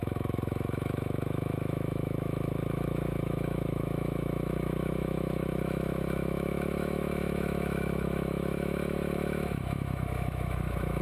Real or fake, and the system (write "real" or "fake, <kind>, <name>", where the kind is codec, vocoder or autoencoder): fake, autoencoder, DAC-VAE